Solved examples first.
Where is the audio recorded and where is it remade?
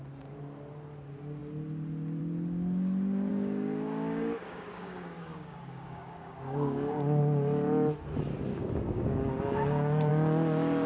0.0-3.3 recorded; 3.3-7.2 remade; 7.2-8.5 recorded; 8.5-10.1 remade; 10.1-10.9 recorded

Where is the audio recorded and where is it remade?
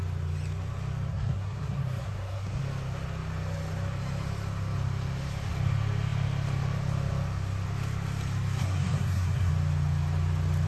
0.0-1.1 recorded; 1.1-2.6 remade; 2.6-8.6 recorded; 8.6-9.5 remade; 9.5-10.7 recorded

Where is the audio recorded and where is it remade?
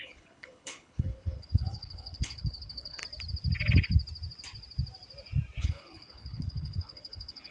0.0-3.0 remade; 3.0-5.6 recorded; 5.6-7.5 remade